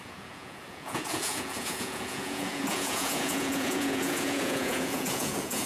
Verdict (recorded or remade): remade